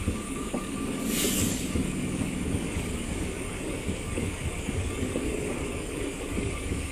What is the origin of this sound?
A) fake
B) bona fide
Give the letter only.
A